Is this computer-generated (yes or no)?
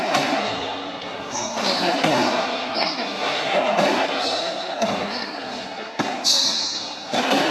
yes